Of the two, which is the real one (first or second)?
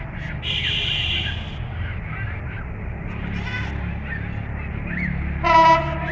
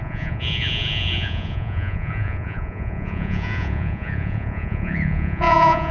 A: first